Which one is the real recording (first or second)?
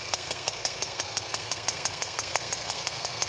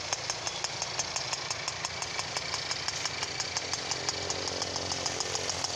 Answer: second